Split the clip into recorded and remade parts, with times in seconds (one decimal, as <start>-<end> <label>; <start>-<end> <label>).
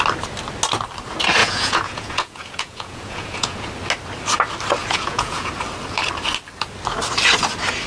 0.0-1.4 recorded; 1.4-3.7 remade; 3.7-4.8 recorded; 4.8-5.5 remade; 5.5-7.9 recorded